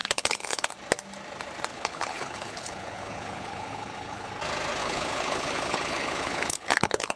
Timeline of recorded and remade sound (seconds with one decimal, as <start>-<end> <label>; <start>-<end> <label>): 0.0-0.7 remade; 0.7-1.7 recorded; 1.7-4.3 remade; 4.3-4.8 recorded; 4.8-7.2 remade